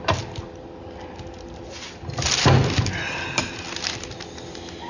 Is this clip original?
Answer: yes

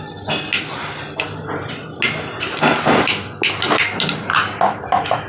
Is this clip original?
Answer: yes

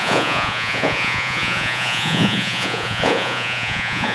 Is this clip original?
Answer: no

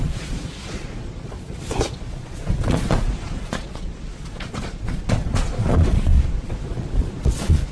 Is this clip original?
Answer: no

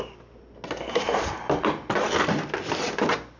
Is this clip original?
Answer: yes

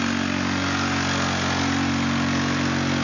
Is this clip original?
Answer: yes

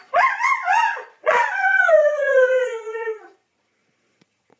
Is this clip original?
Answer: no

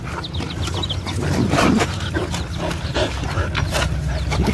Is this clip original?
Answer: yes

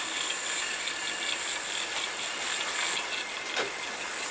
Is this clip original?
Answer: yes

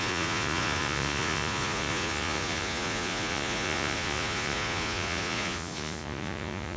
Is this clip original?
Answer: no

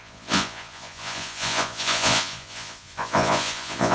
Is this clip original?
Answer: no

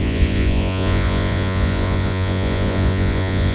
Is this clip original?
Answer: no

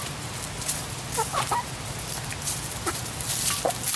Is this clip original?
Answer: yes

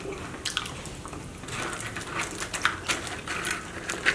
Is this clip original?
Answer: yes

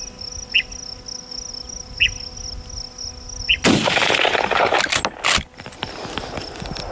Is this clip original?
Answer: yes